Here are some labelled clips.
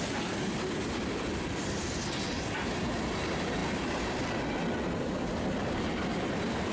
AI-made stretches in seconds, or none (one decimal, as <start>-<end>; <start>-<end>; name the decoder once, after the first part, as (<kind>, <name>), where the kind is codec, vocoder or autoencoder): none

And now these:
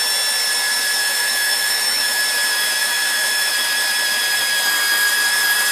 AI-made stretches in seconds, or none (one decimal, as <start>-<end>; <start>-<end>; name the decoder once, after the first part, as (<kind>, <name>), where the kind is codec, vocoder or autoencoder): 1.0-2.2 (autoencoder, DAC-VAE); 2.8-3.5

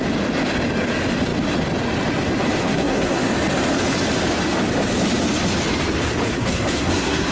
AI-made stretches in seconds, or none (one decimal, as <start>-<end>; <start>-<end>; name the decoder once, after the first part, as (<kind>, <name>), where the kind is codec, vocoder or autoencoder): 2.6-3.3 (codec, SNAC); 6.3-7.3

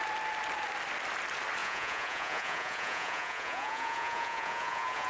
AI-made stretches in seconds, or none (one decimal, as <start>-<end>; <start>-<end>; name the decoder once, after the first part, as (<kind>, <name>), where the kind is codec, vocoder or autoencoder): 1.6-5.1 (vocoder, Vocos)

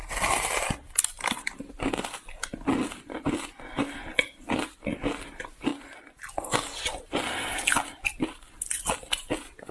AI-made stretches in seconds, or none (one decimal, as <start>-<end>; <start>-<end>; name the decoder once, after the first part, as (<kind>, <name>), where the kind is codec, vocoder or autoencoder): none

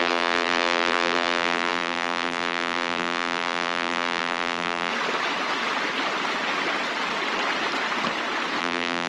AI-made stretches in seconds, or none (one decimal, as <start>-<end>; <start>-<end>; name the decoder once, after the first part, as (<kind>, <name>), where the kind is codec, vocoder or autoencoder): 0.0-4.9 (vocoder, BigVGAN v2); 8.6-9.1